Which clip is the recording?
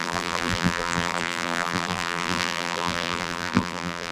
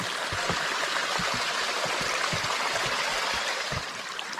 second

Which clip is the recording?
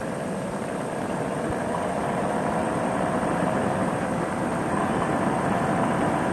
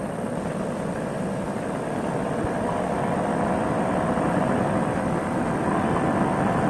second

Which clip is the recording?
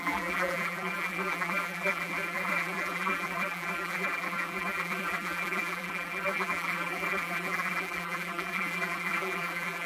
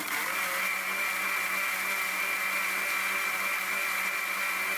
second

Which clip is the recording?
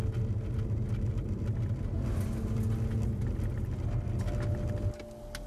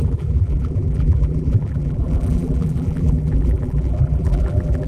first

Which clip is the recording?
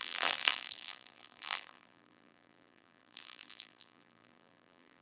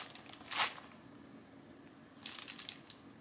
second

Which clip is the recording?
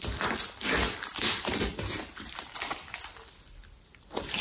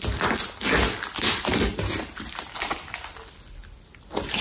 second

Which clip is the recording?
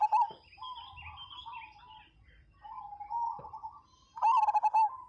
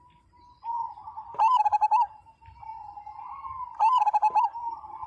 first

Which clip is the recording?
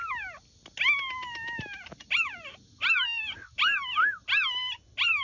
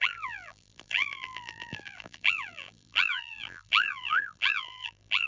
first